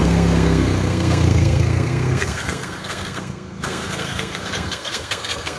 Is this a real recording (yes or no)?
no